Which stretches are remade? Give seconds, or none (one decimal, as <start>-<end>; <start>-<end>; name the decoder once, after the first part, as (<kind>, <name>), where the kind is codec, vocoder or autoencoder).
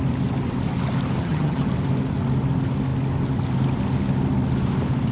1.2-1.7 (vocoder, HiFi-GAN)